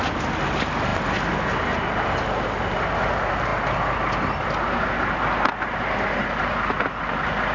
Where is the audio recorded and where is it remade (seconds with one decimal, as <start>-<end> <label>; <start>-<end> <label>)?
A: 0.0-7.5 recorded